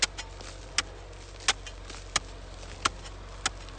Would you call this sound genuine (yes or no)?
yes